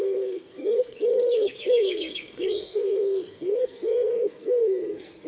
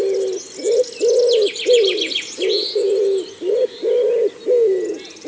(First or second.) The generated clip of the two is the first